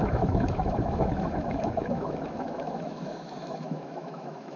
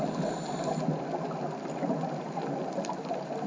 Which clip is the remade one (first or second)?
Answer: first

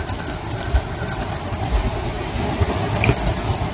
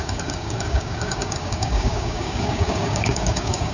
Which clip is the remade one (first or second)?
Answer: second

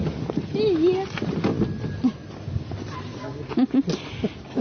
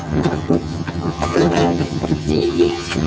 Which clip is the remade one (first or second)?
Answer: second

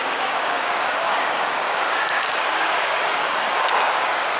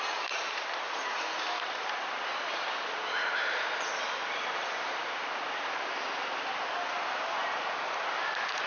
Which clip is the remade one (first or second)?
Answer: first